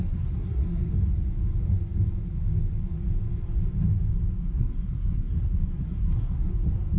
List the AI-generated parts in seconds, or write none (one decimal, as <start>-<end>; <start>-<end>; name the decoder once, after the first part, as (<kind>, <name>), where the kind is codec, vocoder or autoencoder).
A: 0.0-0.9 (codec, SNAC); 4.4-6.5